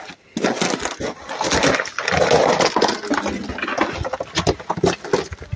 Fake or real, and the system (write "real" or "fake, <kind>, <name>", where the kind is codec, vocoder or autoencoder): real